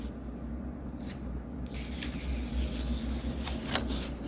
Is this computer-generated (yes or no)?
no